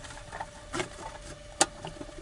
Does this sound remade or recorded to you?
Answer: recorded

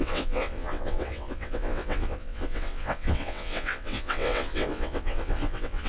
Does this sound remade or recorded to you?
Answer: remade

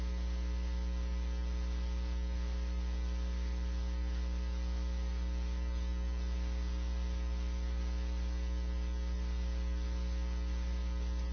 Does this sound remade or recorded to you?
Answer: recorded